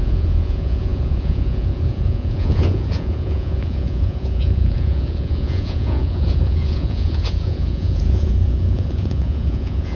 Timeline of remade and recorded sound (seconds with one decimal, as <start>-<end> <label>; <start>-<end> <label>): 0.0-10.0 remade